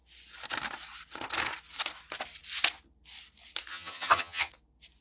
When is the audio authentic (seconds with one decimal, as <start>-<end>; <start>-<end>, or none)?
0.0-3.7; 4.5-5.0